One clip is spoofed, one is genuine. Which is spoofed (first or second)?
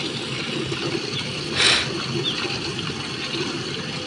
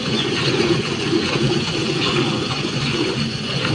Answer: second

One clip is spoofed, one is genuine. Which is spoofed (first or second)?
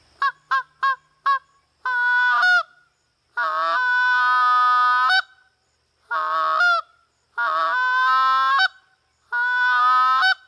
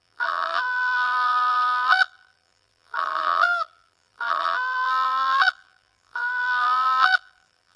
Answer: second